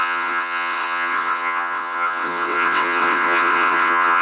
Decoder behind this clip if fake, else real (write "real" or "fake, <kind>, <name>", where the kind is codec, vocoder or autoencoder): fake, vocoder, WaveNeXt